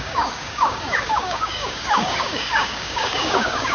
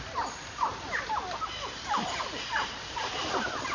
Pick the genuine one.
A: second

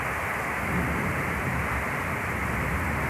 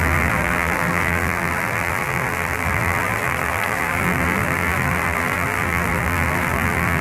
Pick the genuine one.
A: first